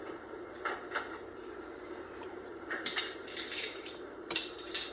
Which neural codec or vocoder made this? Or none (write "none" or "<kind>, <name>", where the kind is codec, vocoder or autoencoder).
vocoder, BigVGAN v2